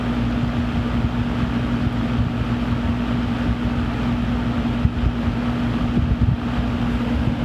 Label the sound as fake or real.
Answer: real